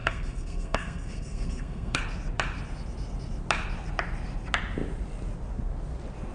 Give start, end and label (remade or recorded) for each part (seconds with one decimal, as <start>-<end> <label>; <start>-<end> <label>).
0.0-2.0 remade; 2.0-6.3 recorded